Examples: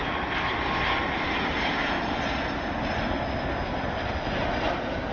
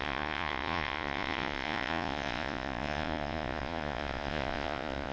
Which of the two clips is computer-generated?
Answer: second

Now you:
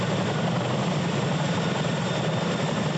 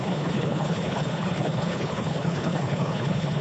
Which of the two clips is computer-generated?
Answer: second